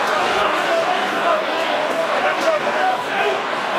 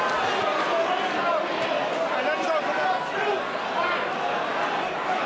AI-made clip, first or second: first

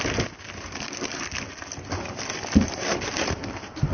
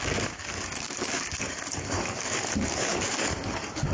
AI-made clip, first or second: second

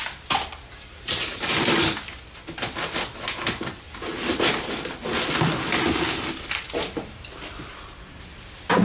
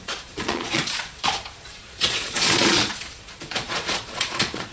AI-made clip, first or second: second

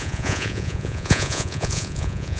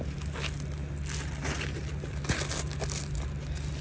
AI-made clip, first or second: first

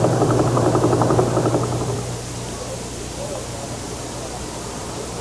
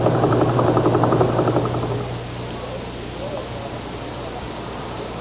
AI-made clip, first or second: first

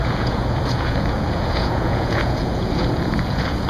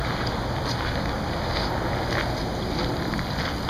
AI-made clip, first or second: first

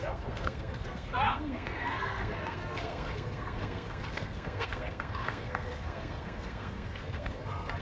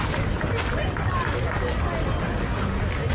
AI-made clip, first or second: first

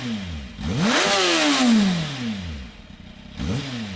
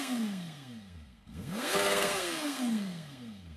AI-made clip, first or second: second